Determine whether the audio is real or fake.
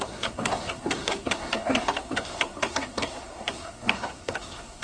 fake